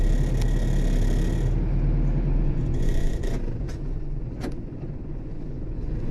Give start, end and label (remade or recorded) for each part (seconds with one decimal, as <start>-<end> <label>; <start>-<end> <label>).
0.0-2.3 recorded; 2.3-6.1 remade